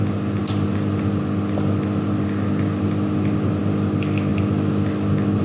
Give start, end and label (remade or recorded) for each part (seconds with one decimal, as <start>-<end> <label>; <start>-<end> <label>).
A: 0.0-5.4 recorded